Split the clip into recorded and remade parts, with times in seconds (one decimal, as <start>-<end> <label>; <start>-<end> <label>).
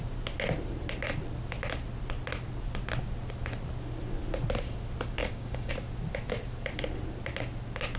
0.0-5.2 recorded; 5.2-5.7 remade; 5.7-8.0 recorded